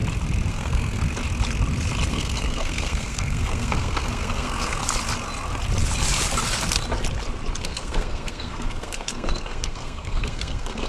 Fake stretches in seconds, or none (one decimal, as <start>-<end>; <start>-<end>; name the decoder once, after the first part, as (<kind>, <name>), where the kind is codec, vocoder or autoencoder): 0.5-1.0 (codec, SNAC); 2.1-4.8; 7.6-10.9